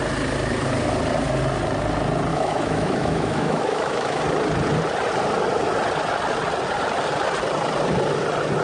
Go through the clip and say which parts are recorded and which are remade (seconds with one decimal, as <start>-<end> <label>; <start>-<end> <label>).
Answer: 0.0-2.3 recorded; 2.3-4.2 remade; 4.2-8.6 recorded